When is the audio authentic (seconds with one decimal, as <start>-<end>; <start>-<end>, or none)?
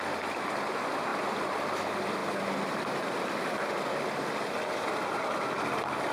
0.0-2.2; 2.8-6.1